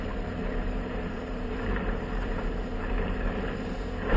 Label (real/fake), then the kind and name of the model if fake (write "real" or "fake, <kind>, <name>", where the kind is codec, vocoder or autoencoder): fake, vocoder, BigVGAN v2